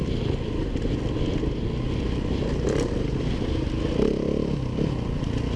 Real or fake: real